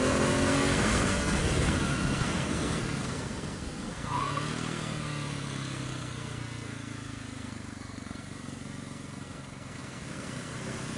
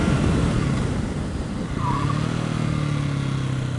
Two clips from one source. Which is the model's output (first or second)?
first